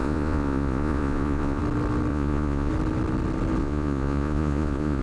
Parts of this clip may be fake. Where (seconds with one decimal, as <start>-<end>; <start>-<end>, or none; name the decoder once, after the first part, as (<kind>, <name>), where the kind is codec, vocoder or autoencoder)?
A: 0.0-1.6 (vocoder, Vocos); 2.1-2.7; 3.6-5.0

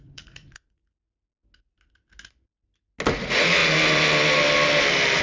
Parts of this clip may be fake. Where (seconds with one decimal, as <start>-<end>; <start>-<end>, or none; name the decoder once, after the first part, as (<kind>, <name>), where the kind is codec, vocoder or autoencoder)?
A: 0.0-0.8 (vocoder, Vocos); 3.1-3.6

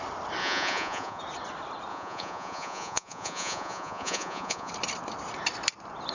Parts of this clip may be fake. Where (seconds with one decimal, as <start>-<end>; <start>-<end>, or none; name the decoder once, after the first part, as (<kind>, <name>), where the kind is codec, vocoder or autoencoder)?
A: 0.4-1.2 (vocoder, Vocos); 1.9-4.7

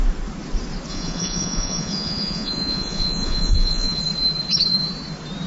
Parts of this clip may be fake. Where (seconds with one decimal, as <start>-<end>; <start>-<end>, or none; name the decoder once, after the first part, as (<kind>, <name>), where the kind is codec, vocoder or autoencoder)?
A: 0.9-4.0 (vocoder, Vocos)

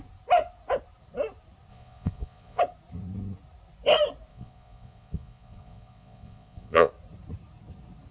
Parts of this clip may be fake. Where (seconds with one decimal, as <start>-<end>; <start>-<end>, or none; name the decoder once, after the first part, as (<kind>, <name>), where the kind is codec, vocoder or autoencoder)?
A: 1.7-2.6 (vocoder, Vocos); 4.3-6.9

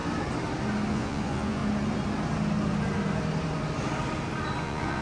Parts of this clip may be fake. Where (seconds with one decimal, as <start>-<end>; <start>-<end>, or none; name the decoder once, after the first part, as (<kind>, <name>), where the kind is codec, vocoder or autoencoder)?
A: 0.9-1.6 (vocoder, Vocos); 4.6-5.0